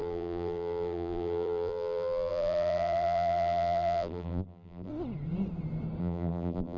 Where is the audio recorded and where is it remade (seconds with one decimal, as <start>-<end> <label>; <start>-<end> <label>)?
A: 0.0-4.9 remade; 4.9-6.0 recorded; 6.0-6.8 remade